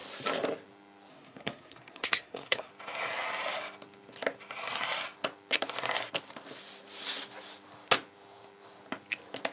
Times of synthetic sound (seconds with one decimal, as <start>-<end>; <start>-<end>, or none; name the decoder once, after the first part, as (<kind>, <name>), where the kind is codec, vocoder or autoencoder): 1.1-2.7 (codec, SNAC)